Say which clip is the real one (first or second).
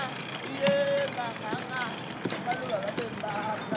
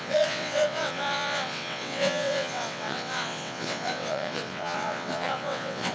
first